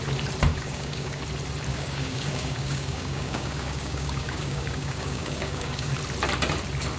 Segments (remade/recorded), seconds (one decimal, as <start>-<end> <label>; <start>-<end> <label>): 0.0-0.5 recorded; 0.5-1.2 remade; 1.2-1.7 recorded; 1.7-5.9 remade; 5.9-7.0 recorded